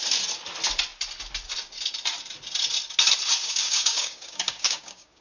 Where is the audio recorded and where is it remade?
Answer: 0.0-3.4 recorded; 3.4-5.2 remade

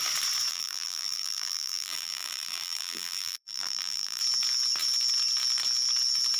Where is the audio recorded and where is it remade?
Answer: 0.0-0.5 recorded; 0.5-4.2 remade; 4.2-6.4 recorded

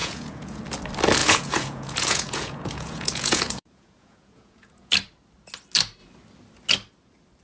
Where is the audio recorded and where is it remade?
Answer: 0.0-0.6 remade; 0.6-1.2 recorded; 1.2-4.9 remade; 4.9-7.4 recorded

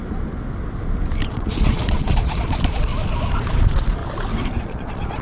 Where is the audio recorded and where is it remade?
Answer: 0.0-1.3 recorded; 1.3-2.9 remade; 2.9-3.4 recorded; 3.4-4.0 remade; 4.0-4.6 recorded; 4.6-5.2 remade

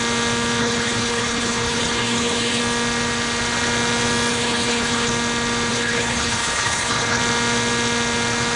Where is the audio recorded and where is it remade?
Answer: 0.0-0.6 recorded; 0.6-2.6 remade; 2.6-4.3 recorded; 4.3-5.1 remade; 5.1-5.7 recorded; 5.7-7.2 remade; 7.2-8.6 recorded

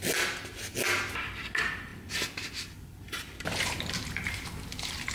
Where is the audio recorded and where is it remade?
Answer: 0.0-5.1 recorded

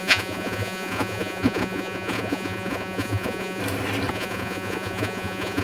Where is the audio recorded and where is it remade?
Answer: 0.0-3.6 remade; 3.6-4.1 recorded; 4.1-5.6 remade

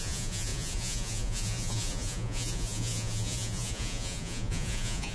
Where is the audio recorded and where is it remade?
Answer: 0.0-5.1 remade